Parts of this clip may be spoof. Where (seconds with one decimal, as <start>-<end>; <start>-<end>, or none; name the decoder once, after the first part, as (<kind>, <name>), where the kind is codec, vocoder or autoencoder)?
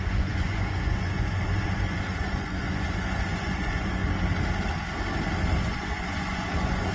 0.0-4.0 (vocoder, Vocos); 5.6-6.9